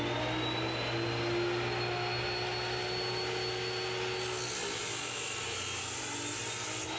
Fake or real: real